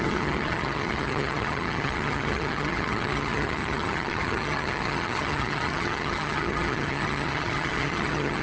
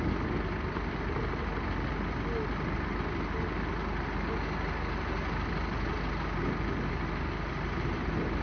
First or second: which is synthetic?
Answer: first